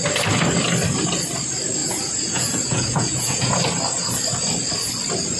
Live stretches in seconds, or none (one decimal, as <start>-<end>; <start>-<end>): 0.0-1.8; 3.5-5.4